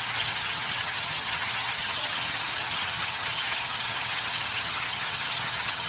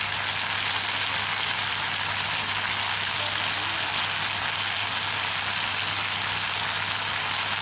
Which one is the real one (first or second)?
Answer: second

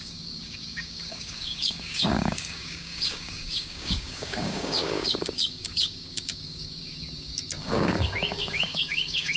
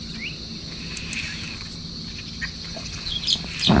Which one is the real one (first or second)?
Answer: second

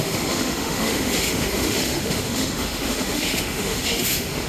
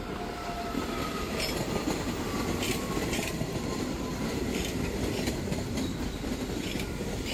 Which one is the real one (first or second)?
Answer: second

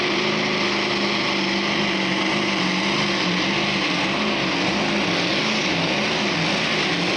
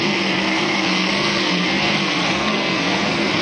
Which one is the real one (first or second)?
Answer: first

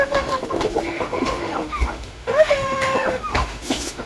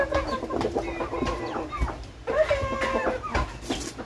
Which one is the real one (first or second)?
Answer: second